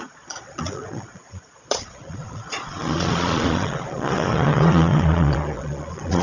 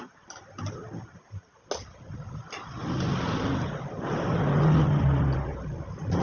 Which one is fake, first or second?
first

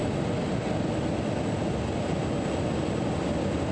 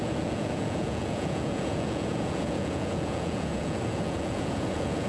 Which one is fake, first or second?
second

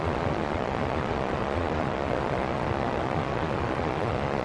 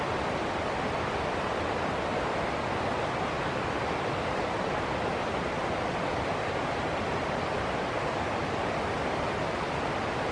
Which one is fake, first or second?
first